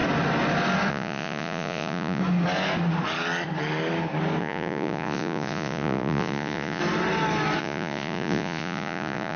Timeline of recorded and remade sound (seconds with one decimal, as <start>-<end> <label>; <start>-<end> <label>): 0.0-0.9 recorded; 0.9-2.2 remade; 2.2-4.4 recorded; 4.4-6.8 remade; 6.8-7.6 recorded; 7.6-9.4 remade